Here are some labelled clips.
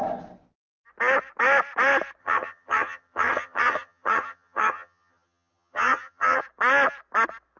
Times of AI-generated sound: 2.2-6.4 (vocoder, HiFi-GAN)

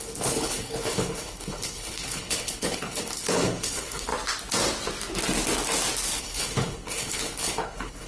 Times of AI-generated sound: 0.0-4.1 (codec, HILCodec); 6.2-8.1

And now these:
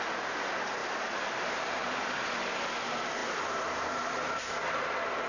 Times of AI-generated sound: 0.8-1.6 (vocoder, BigVGAN v2); 3.2-5.3

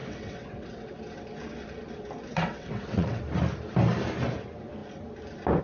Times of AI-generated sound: 0.0-1.0 (vocoder, WaveNeXt); 2.3-3.2

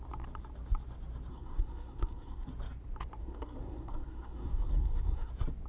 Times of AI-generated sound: 1.3-2.5 (codec, SNAC); 3.2-5.3

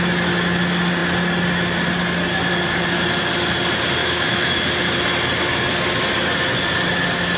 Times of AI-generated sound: 4.0-4.7 (autoencoder, DAC-VAE)

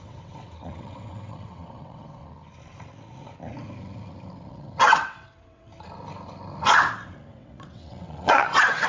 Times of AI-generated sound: 0.0-2.2 (vocoder, WaveNeXt); 4.5-5.7; 7.3-8.9